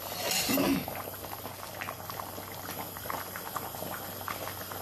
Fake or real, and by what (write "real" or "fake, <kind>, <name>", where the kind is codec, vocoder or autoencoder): real